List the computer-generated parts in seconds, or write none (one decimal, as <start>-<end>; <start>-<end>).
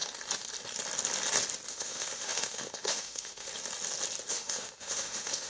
1.7-3.5; 4.3-5.5